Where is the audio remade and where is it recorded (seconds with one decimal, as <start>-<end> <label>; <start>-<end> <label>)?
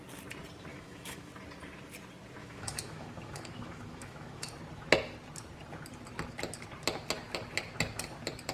0.0-0.7 recorded; 0.7-1.3 remade; 1.3-2.4 recorded; 2.4-4.5 remade; 4.5-8.5 recorded